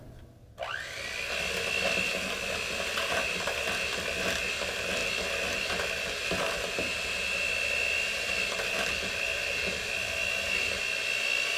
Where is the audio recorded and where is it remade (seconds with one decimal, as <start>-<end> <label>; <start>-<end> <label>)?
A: 0.0-11.6 recorded